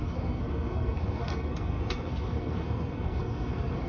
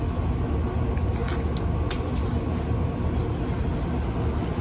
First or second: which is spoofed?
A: first